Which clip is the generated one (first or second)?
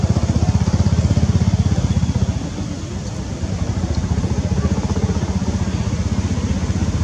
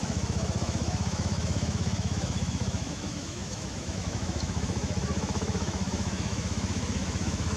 second